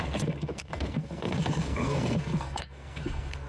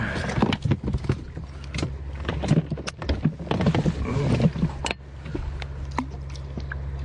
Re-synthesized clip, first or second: first